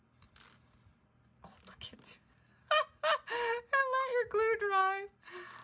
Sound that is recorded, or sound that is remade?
recorded